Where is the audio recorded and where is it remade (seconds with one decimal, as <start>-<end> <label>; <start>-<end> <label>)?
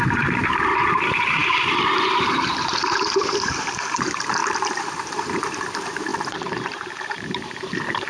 0.0-8.1 remade